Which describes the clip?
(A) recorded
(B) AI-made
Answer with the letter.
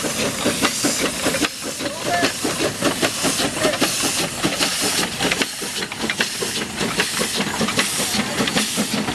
A